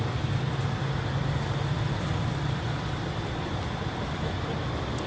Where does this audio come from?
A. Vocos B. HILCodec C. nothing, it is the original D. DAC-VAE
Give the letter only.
C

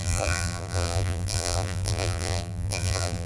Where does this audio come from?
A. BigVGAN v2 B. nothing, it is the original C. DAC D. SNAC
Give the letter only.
A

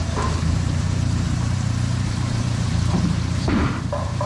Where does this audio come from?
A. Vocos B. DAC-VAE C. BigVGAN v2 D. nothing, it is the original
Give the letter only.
C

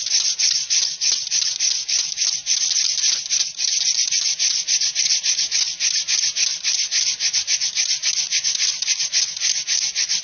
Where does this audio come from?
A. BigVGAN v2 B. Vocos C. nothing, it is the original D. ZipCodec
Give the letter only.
C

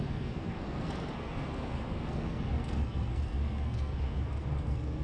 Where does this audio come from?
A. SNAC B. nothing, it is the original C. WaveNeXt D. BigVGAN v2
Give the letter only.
A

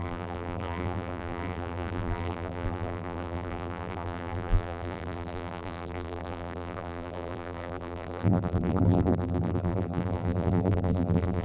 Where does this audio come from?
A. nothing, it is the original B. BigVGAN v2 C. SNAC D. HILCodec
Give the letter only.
B